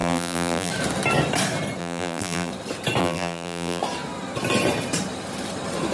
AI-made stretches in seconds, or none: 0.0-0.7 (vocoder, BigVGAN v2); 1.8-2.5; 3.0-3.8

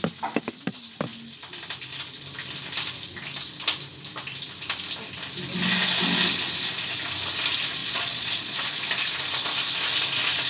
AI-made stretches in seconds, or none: 7.8-8.8 (vocoder, Vocos)

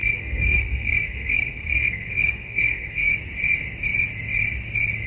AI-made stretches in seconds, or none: 0.0-3.1 (codec, SNAC)

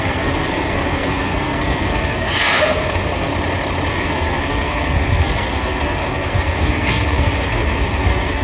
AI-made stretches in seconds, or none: 0.0-3.3 (codec, SNAC); 3.9-8.4